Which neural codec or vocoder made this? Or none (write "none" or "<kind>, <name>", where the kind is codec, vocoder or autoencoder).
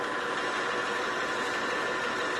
none